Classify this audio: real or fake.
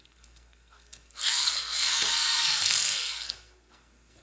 fake